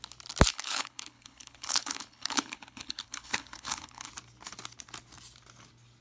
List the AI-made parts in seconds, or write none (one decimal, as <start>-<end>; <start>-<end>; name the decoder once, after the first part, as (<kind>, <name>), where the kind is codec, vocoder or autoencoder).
0.5-4.1 (codec, HILCodec)